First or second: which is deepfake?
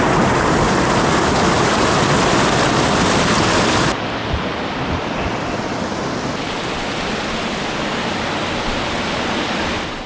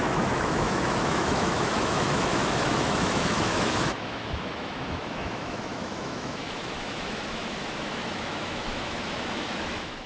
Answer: second